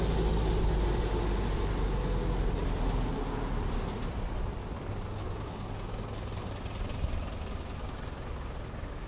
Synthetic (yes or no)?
no